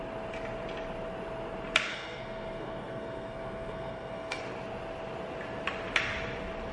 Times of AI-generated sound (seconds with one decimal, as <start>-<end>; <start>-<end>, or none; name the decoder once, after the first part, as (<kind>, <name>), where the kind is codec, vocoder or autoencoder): 1.9-4.4 (codec, SNAC)